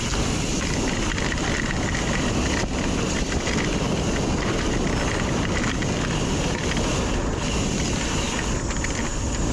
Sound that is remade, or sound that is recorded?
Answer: recorded